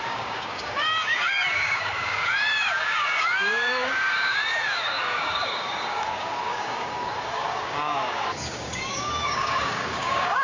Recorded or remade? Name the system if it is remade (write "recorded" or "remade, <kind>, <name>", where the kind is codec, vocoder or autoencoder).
remade, codec, DAC